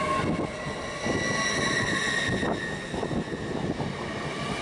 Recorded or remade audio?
recorded